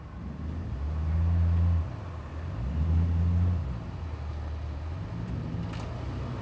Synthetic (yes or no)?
no